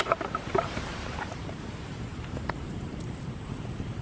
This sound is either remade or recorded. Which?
remade